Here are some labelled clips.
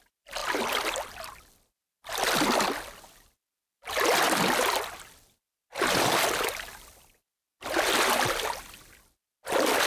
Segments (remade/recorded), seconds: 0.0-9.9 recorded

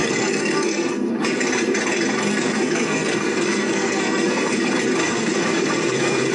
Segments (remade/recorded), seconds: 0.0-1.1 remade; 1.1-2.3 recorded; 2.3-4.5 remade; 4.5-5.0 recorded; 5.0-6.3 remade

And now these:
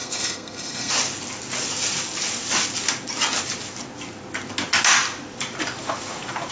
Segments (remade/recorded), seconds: 0.0-0.9 remade; 0.9-6.5 recorded

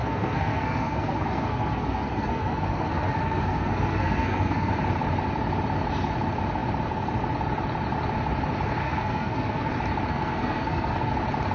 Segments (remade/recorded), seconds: 0.0-4.7 remade; 4.7-8.8 recorded; 8.8-9.7 remade; 9.7-10.1 recorded; 10.1-11.1 remade; 11.1-11.5 recorded

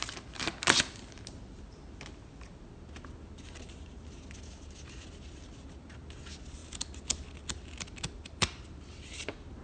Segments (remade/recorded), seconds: 0.0-9.6 recorded

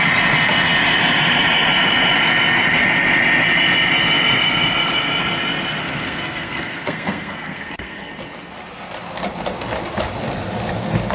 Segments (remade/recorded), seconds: 0.0-5.8 recorded; 5.8-8.1 remade; 8.1-11.1 recorded

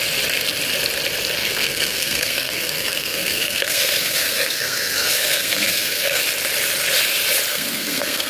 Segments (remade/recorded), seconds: 0.0-1.4 recorded; 1.4-6.2 remade; 6.2-7.5 recorded; 7.5-8.3 remade

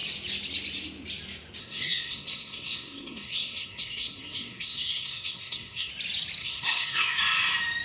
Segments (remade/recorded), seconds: 0.0-1.6 recorded; 1.6-5.9 remade; 5.9-6.4 recorded; 6.4-7.2 remade; 7.2-7.8 recorded